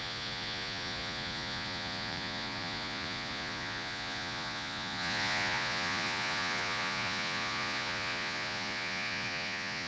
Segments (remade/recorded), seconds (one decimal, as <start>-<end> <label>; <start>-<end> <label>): 0.0-9.9 remade